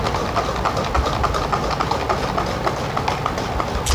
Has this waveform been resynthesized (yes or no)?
no